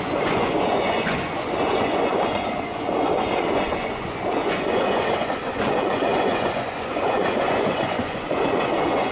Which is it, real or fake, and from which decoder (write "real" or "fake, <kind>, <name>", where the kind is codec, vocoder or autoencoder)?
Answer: fake, vocoder, Vocos